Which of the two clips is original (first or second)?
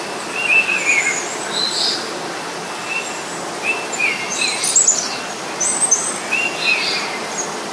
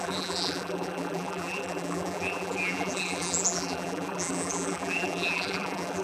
first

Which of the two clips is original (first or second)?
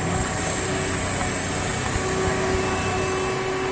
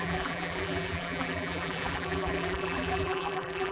first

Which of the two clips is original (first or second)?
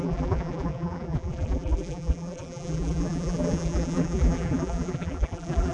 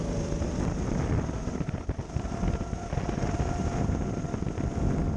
second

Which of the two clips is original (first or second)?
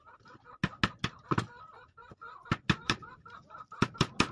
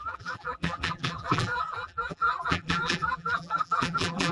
first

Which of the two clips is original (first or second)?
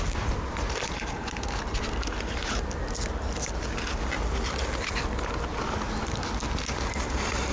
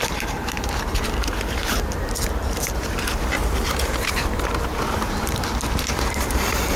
first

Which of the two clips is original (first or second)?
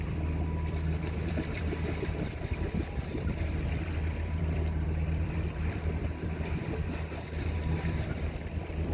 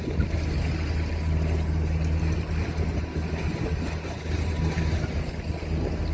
second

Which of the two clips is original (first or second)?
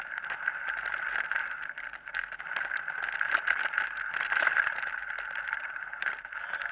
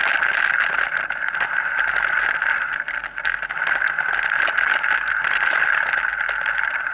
second